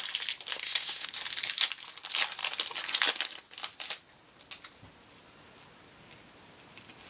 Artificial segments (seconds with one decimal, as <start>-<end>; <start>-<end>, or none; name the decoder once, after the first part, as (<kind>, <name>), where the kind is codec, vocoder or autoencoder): 0.5-1.1 (codec, SNAC)